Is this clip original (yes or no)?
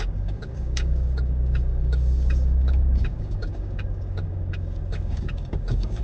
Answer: no